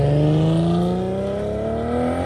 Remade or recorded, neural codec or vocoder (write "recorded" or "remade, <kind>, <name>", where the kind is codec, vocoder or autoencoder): recorded